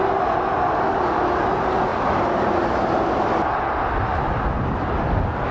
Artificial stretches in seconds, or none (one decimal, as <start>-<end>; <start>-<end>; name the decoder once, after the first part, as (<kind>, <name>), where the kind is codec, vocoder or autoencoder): none